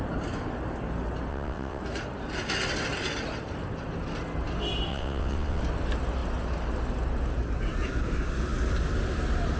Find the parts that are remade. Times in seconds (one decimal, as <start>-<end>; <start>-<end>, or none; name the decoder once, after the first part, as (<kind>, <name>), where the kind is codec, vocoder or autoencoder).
1.3-1.8 (vocoder, WaveNeXt); 4.9-5.6